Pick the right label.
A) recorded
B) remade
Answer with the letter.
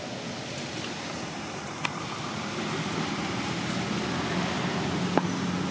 A